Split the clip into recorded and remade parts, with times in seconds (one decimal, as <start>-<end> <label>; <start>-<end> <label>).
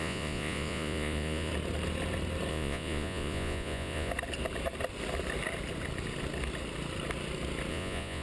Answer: 0.0-1.5 remade; 1.5-2.5 recorded; 2.5-4.1 remade; 4.1-7.7 recorded; 7.7-8.2 remade